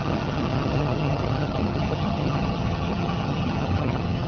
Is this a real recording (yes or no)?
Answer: no